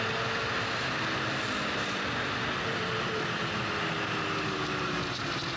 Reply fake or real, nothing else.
real